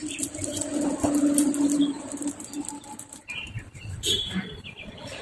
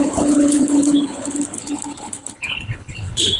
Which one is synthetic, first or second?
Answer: second